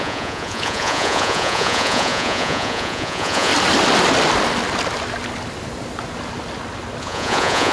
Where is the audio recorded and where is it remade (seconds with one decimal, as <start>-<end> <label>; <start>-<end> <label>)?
0.0-3.5 remade; 3.5-7.0 recorded; 7.0-7.7 remade